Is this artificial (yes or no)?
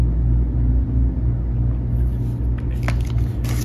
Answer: no